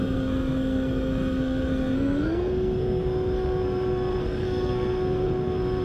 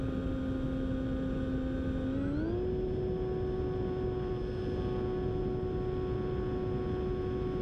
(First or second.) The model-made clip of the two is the first